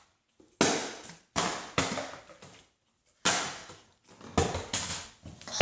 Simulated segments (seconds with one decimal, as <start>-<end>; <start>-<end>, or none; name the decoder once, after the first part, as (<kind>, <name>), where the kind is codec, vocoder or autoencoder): 0.8-2.6 (vocoder, BigVGAN v2)